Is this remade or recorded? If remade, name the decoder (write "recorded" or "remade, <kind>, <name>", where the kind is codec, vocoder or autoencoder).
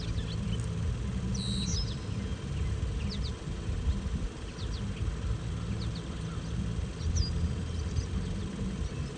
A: recorded